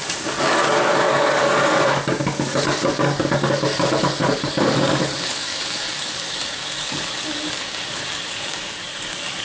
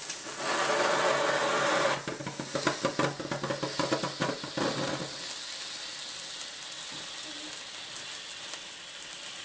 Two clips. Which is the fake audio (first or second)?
first